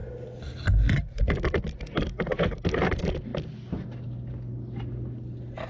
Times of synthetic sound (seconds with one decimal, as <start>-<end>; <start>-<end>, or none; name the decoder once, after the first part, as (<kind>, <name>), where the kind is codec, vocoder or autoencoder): none